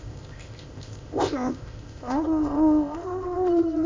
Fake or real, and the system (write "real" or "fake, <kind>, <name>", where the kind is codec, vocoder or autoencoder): fake, codec, ZipCodec